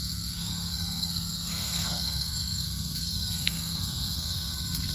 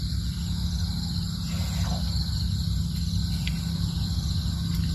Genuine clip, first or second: second